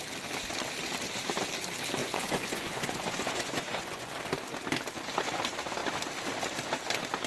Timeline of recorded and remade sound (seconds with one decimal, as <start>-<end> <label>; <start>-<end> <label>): 0.0-2.0 recorded; 2.0-4.1 remade; 4.1-7.3 recorded